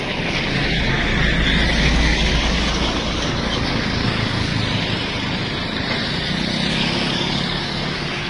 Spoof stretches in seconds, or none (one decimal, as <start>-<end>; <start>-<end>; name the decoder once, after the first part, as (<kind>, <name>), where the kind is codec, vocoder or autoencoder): 0.0-1.1 (codec, DAC); 1.8-4.5; 6.7-8.3